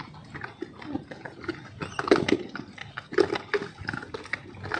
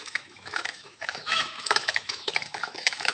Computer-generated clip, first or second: second